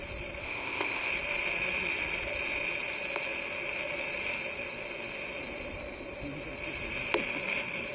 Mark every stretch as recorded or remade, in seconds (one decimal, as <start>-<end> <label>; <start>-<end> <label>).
0.0-0.4 recorded; 0.4-1.1 remade; 1.1-7.9 recorded